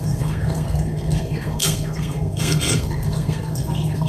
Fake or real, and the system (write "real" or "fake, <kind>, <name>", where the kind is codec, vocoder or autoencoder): fake, codec, SNAC